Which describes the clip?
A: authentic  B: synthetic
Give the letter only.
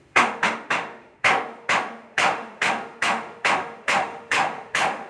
B